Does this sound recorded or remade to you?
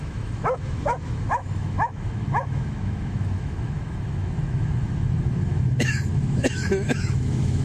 remade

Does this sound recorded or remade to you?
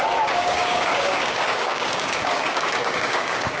remade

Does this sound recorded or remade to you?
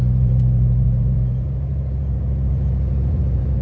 remade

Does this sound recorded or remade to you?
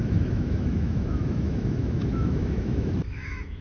remade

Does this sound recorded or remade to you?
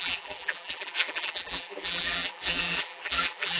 remade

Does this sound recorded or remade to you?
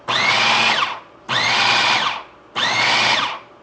recorded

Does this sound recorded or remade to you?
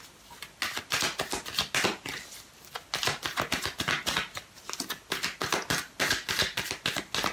recorded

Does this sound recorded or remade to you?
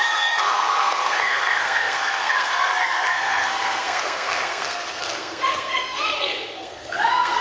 remade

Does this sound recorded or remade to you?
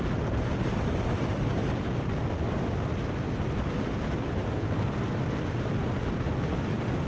recorded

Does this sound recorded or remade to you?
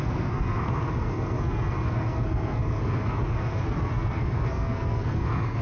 remade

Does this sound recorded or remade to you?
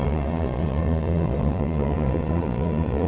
remade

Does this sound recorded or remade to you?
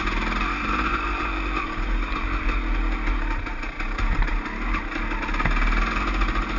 recorded